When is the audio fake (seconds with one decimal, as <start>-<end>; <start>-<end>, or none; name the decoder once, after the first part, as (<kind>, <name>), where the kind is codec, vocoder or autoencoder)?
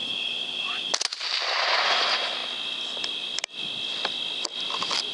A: none